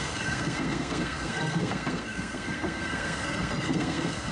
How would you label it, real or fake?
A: fake